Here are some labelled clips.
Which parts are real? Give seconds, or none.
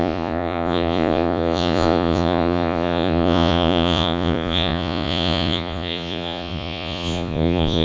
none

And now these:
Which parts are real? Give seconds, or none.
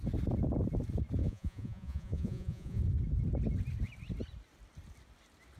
0.0-1.2; 2.8-5.6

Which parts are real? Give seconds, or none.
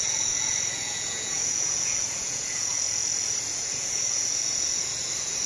none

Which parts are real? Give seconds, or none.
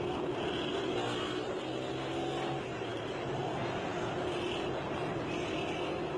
0.0-6.2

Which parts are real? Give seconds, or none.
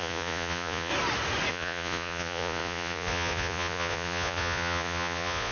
0.9-1.5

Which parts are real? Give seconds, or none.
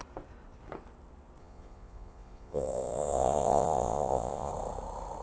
0.0-1.4; 4.5-5.2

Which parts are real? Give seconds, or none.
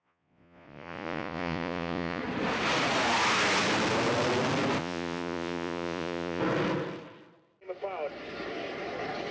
2.2-4.8; 6.4-9.3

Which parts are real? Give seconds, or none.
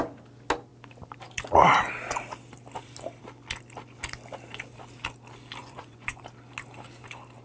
0.0-5.6; 6.2-7.4